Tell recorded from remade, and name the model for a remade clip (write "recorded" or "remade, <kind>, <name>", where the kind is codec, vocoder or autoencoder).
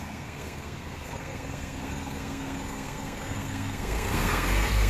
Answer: remade, codec, SNAC